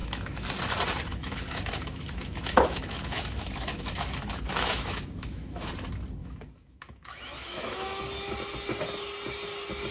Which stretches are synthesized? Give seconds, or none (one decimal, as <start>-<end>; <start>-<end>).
0.0-0.5; 1.1-5.7; 6.2-8.0